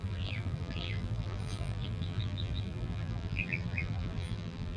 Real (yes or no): no